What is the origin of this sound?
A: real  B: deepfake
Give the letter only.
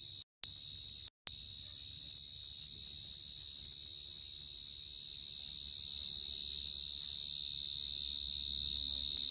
A